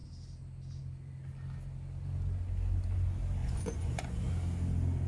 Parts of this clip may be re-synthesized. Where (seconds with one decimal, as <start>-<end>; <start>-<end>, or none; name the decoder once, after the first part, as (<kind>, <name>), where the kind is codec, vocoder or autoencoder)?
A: 3.4-4.3 (vocoder, Vocos)